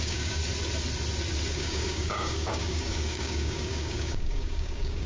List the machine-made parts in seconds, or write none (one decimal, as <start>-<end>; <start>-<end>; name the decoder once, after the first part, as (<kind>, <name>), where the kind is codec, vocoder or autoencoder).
0.0-0.4 (codec, DAC); 1.5-5.1